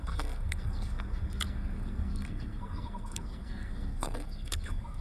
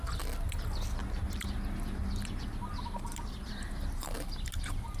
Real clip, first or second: second